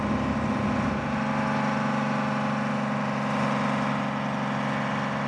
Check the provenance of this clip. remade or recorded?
recorded